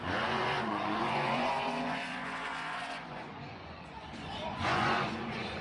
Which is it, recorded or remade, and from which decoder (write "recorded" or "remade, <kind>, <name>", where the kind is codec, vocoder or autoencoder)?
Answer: remade, vocoder, Vocos